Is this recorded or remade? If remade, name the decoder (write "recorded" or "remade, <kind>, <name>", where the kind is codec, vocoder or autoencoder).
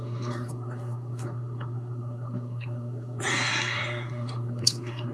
remade, codec, SNAC